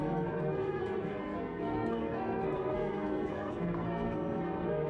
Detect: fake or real fake